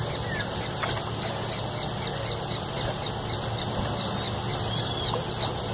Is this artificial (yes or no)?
no